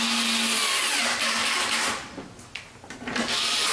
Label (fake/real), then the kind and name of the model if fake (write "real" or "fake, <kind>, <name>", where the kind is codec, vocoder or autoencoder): real